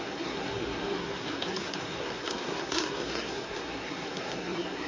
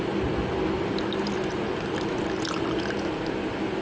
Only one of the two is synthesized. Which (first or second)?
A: first